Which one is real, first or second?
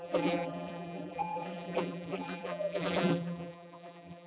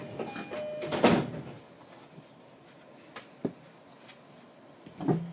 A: second